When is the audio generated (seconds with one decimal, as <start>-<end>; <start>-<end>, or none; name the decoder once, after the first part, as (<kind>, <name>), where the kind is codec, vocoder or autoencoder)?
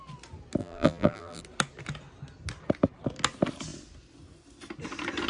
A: 0.6-1.4 (vocoder, BigVGAN v2)